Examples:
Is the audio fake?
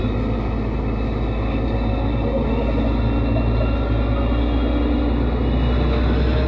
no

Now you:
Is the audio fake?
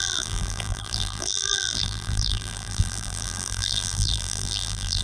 yes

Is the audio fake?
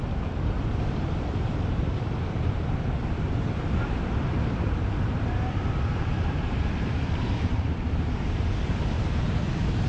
yes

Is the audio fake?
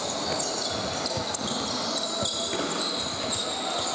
no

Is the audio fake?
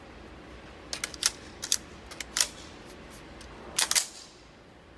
no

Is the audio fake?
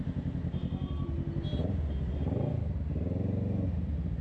no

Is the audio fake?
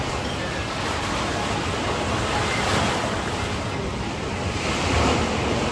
no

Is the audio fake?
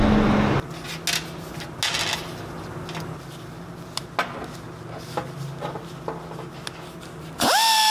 no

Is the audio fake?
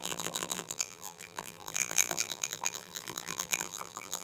yes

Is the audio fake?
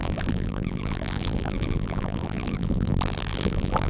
yes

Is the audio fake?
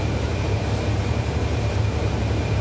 yes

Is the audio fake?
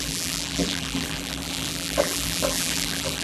yes